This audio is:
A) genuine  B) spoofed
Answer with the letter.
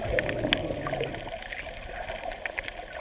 A